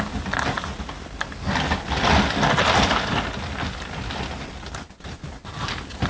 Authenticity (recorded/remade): recorded